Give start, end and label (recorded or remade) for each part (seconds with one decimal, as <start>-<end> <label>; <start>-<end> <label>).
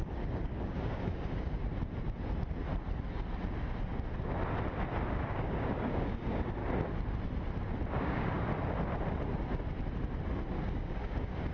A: 0.0-1.6 remade; 1.6-5.2 recorded; 5.2-6.6 remade; 6.6-7.9 recorded; 7.9-8.5 remade; 8.5-10.6 recorded; 10.6-11.5 remade